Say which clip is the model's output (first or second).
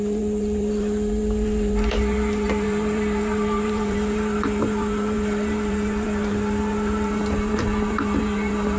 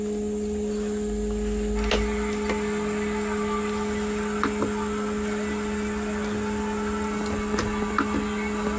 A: first